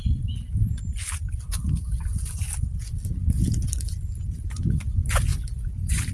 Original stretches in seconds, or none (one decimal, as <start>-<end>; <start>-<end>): 0.0-6.1